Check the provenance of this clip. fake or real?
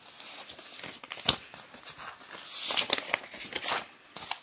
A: real